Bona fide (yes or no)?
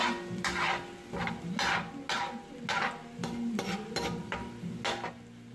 yes